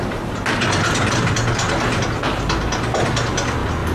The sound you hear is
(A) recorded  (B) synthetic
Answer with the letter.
A